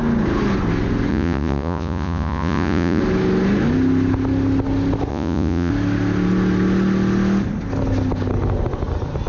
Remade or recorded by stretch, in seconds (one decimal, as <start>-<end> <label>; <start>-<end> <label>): 0.0-1.1 recorded; 1.1-3.0 remade; 3.0-5.1 recorded; 5.1-5.7 remade; 5.7-9.3 recorded

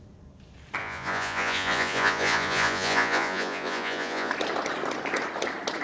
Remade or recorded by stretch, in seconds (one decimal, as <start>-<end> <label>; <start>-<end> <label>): 0.0-0.8 recorded; 0.8-4.3 remade; 4.3-5.8 recorded

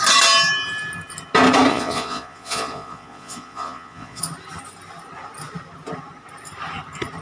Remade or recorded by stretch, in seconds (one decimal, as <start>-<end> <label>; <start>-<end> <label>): 0.0-1.7 recorded; 1.7-4.2 remade; 4.2-7.2 recorded

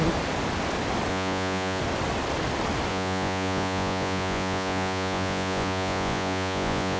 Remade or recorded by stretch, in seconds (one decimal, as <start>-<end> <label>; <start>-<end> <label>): 0.0-1.1 recorded; 1.1-1.8 remade; 1.8-2.9 recorded; 2.9-7.0 remade

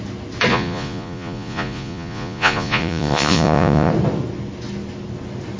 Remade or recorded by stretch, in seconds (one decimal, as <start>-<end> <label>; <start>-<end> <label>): 0.0-0.5 recorded; 0.5-3.9 remade; 3.9-5.6 recorded

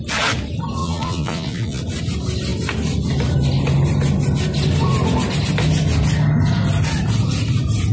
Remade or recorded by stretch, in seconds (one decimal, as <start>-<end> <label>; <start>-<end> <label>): 0.0-0.8 recorded; 0.8-1.8 remade; 1.8-7.9 recorded

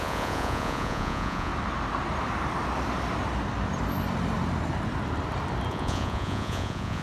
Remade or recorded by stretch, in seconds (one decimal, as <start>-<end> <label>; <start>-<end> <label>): 0.0-1.5 remade; 1.5-5.7 recorded; 5.7-7.0 remade

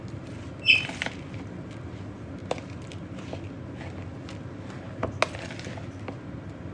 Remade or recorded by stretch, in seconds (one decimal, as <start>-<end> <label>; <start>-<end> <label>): 0.0-6.7 recorded